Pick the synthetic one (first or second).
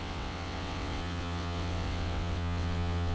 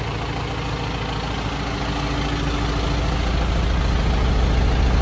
first